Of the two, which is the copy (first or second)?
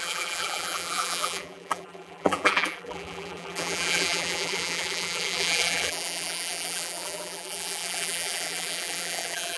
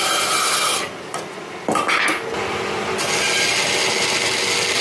first